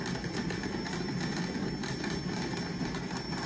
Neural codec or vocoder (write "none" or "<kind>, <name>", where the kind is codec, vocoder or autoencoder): none